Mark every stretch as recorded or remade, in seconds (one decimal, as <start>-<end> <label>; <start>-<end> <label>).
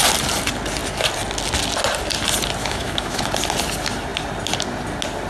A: 0.0-2.6 recorded; 2.6-3.2 remade; 3.2-5.3 recorded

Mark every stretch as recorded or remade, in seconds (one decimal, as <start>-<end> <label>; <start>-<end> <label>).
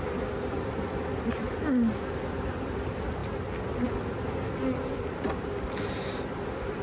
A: 0.0-6.8 recorded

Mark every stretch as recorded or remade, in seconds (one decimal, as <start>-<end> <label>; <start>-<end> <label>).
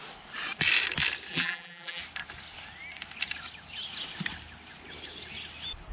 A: 0.0-1.3 recorded; 1.3-2.0 remade; 2.0-5.9 recorded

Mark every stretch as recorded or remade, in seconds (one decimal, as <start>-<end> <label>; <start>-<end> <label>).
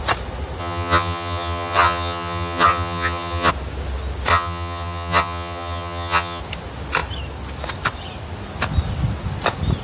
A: 0.0-0.6 recorded; 0.6-3.5 remade; 3.5-4.3 recorded; 4.3-6.4 remade; 6.4-9.8 recorded